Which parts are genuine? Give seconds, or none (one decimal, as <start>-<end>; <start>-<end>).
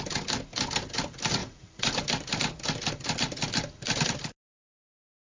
0.0-1.4; 2.0-5.4